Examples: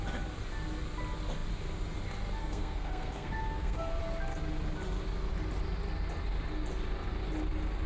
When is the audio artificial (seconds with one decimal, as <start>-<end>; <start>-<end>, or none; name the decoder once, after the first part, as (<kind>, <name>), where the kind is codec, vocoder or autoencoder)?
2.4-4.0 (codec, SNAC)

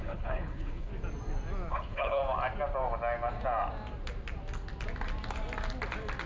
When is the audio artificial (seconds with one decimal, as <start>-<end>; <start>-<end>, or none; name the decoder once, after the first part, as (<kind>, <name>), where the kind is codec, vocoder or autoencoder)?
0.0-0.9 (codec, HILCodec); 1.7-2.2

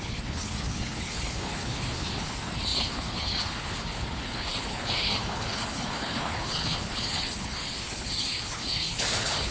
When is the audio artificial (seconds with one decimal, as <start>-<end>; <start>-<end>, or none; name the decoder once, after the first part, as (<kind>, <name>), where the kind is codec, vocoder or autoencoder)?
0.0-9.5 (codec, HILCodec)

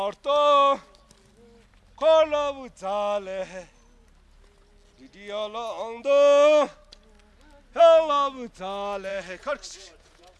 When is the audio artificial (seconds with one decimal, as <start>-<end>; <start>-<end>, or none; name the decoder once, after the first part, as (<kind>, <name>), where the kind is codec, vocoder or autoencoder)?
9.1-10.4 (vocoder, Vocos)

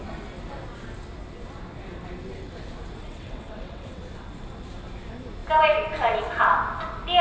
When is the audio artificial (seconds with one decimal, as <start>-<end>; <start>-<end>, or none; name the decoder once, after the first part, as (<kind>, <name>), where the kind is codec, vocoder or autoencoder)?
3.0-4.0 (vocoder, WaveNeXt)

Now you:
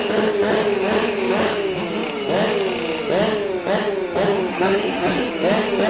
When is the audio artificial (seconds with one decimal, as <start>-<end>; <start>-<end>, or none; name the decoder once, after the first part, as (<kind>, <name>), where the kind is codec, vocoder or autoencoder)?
4.5-5.3 (codec, SNAC)

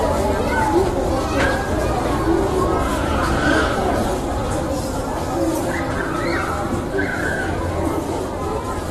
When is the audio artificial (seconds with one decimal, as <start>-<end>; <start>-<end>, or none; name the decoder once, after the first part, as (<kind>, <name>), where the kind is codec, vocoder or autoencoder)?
2.9-3.9 (codec, DAC); 7.1-8.2